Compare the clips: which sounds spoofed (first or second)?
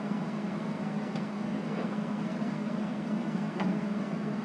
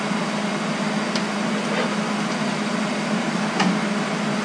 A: first